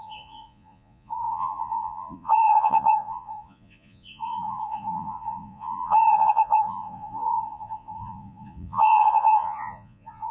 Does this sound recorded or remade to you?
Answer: remade